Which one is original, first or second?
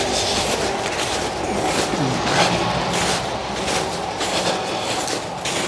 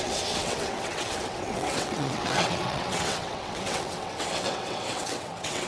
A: first